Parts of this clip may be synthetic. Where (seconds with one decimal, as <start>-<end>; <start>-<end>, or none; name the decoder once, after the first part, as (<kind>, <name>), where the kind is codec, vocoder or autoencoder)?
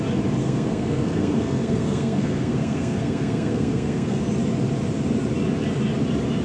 0.4-4.2 (codec, SNAC)